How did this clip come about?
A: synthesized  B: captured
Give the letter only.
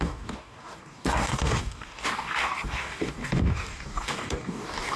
A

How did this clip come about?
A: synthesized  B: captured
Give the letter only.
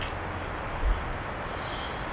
B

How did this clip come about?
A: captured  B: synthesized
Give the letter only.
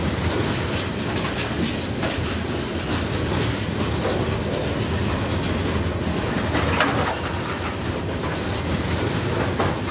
A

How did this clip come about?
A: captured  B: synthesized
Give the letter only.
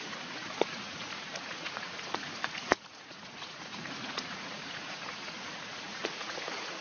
B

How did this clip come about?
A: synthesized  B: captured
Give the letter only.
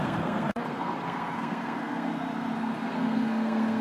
A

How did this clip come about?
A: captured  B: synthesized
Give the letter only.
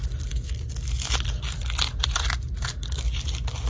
A